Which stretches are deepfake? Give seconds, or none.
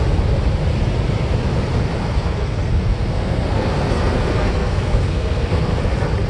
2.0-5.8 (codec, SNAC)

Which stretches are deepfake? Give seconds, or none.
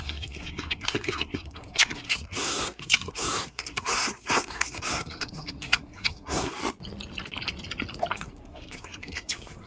0.0-6.6 (codec, SNAC); 8.1-9.7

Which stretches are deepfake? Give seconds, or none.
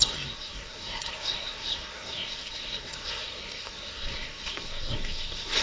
0.0-5.6 (codec, SNAC)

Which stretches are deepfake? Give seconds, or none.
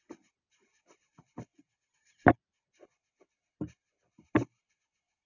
none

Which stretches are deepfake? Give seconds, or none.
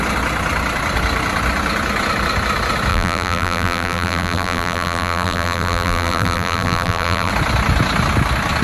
2.9-7.3 (vocoder, BigVGAN v2)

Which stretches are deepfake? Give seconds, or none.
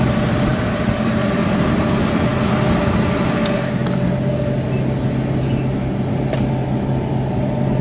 0.5-2.3 (vocoder, BigVGAN v2)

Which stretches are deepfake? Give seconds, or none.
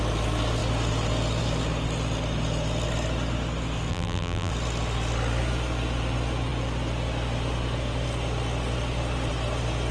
3.9-4.5 (vocoder, BigVGAN v2)